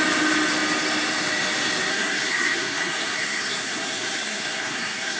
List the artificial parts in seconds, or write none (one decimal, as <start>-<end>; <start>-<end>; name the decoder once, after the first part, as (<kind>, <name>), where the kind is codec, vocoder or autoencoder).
1.9-5.2 (codec, SNAC)